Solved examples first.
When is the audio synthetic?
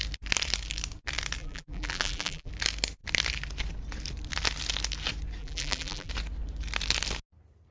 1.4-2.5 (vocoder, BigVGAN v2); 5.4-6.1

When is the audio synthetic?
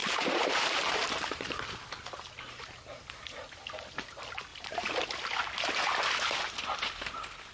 0.0-1.6 (vocoder, BigVGAN v2); 4.5-5.0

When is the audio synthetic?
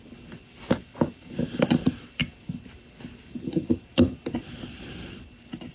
0.0-2.2 (vocoder, BigVGAN v2); 3.5-5.7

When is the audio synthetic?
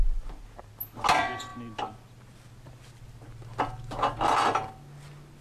none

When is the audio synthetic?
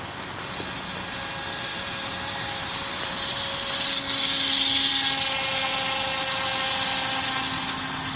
1.7-3.4 (vocoder, BigVGAN v2)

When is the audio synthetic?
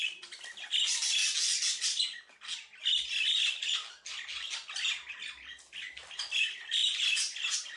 0.0-1.2 (vocoder, BigVGAN v2); 5.5-6.8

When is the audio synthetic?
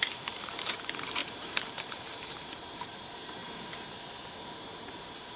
0.0-3.4 (vocoder, BigVGAN v2); 4.9-5.4